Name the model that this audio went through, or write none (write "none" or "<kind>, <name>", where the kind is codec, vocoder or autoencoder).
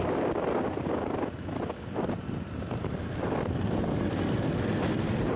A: none